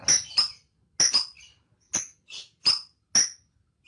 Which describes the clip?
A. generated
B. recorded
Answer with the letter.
B